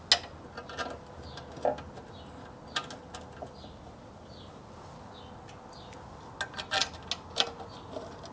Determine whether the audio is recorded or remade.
recorded